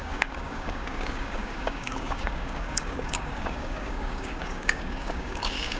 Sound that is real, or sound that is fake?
fake